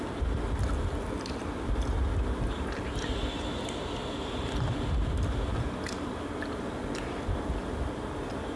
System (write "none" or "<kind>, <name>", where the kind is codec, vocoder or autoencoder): none